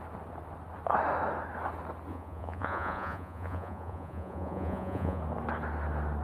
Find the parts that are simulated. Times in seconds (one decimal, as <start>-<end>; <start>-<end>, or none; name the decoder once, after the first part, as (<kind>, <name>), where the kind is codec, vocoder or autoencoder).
2.1-5.2 (vocoder, Vocos)

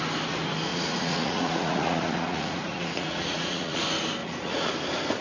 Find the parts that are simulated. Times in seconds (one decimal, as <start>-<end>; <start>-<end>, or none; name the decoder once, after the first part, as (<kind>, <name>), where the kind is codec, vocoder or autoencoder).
0.7-3.8 (vocoder, Vocos); 4.2-4.7